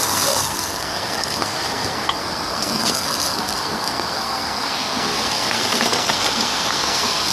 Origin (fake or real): fake